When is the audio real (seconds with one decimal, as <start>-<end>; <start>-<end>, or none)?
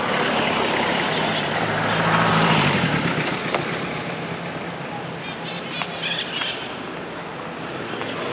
0.0-2.3; 6.7-8.3